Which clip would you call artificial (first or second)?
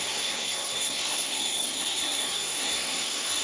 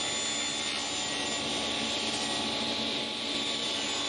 first